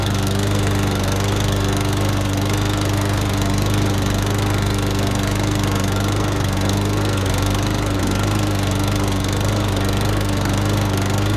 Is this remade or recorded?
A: remade